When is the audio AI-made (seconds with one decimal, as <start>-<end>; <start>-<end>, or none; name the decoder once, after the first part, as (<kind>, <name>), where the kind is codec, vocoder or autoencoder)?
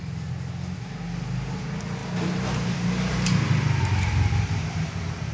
none